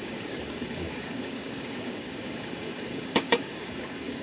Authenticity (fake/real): fake